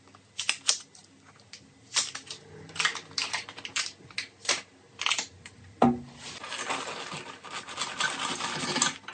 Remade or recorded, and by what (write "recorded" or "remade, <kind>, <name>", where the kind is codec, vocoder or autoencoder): recorded